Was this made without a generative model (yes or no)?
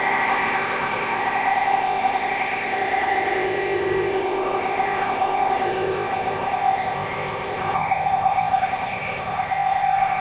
no